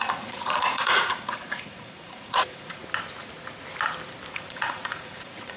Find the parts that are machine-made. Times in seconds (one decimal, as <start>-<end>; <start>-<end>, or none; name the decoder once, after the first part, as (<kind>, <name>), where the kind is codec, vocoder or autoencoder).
0.0-2.8 (vocoder, Vocos); 4.3-5.6